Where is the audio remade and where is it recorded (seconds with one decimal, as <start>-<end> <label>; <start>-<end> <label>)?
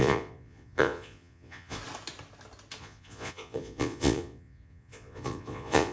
0.0-1.8 remade; 1.8-2.8 recorded; 2.8-5.9 remade